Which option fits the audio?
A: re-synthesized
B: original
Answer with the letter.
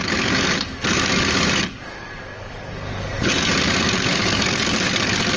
A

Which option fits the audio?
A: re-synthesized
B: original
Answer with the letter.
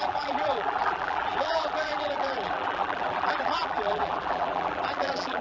A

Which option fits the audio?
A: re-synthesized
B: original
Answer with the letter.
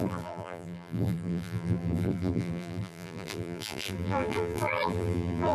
A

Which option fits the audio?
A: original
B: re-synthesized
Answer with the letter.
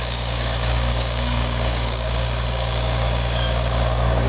B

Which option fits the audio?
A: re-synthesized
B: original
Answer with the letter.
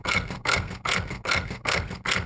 A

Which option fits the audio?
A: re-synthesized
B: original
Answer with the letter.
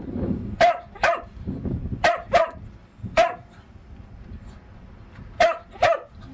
B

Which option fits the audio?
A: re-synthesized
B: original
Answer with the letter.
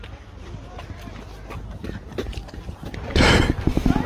B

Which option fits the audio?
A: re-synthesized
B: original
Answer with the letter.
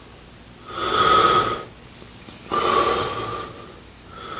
B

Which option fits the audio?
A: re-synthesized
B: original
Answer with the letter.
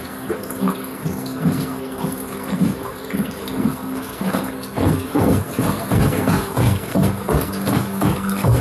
A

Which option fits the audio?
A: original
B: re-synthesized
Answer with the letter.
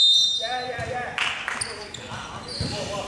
A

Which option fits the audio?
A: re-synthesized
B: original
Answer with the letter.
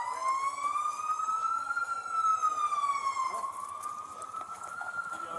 B